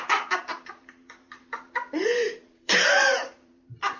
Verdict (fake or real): fake